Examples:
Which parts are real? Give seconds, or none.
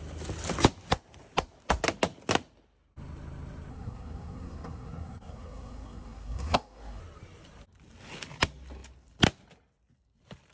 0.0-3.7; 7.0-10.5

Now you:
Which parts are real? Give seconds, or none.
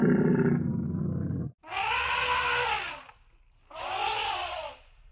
0.0-5.1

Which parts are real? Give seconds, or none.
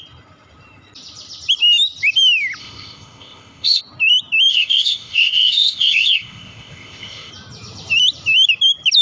0.0-2.6; 3.8-4.5; 7.3-9.0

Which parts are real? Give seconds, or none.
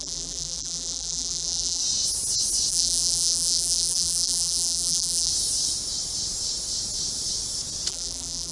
1.8-2.7; 5.3-7.9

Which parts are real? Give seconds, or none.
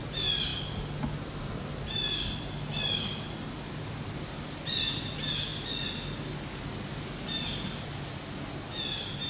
0.0-9.3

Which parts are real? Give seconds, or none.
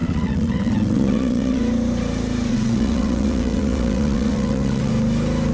1.6-2.5; 4.9-5.5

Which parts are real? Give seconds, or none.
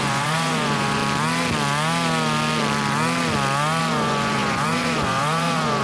1.0-3.8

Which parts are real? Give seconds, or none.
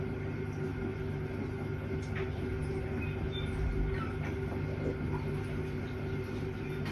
0.0-6.9